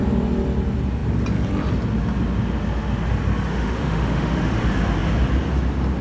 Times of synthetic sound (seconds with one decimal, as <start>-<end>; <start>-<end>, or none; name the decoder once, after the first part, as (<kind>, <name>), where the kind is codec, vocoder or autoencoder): 3.5-4.6 (autoencoder, DAC-VAE)